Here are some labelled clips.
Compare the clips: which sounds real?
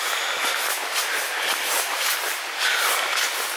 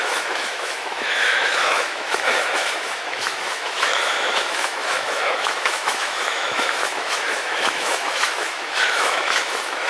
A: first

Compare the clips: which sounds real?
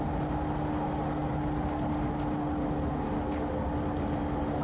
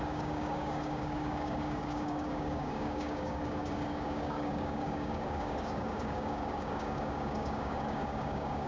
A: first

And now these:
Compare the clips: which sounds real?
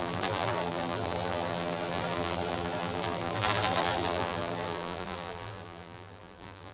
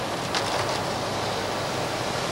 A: second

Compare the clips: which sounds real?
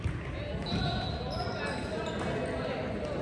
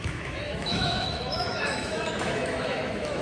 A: first